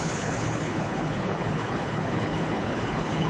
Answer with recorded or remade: remade